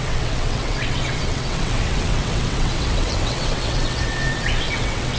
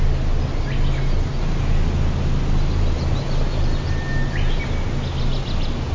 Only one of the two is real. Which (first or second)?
second